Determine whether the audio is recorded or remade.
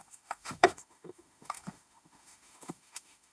remade